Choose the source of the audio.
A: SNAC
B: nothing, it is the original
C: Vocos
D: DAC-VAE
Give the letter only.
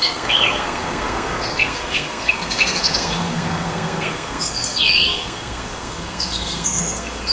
A